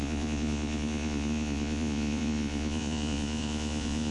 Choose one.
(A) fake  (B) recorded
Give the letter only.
A